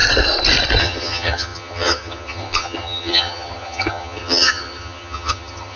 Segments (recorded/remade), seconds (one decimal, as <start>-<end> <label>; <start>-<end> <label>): 0.0-0.8 recorded; 0.8-5.8 remade